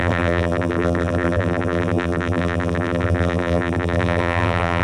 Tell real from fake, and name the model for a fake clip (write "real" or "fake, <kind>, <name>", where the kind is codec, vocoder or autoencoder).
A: fake, vocoder, BigVGAN v2